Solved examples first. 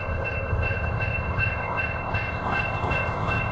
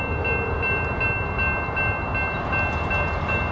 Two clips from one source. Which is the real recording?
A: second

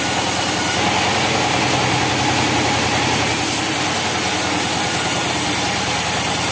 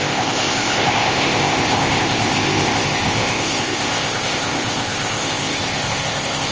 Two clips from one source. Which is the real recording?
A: first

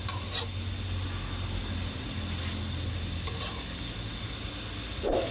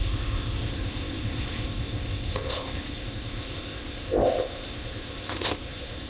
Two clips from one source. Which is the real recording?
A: first